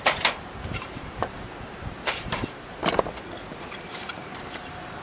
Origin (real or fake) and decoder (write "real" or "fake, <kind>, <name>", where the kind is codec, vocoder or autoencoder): fake, vocoder, BigVGAN v2